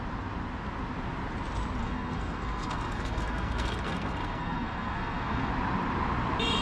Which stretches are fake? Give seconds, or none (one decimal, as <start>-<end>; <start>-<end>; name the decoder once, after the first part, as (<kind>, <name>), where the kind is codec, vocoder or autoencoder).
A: 1.8-5.5 (codec, SNAC)